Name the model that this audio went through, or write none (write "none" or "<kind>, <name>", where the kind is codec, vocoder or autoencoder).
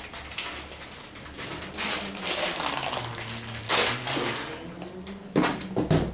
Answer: none